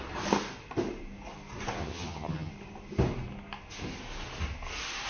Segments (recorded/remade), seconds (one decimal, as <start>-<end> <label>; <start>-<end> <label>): 0.0-1.8 recorded; 1.8-2.5 remade; 2.5-5.1 recorded